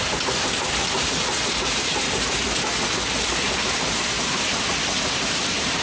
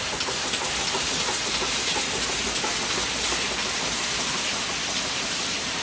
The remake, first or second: first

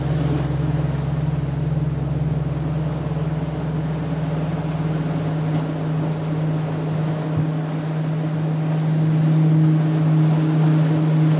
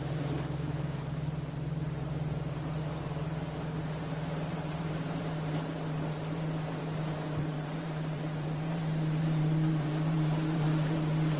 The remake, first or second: second